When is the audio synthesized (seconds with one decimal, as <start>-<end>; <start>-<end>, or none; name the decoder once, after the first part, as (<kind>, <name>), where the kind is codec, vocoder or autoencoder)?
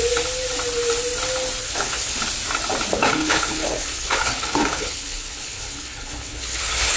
1.6-2.2 (codec, HILCodec); 2.9-7.0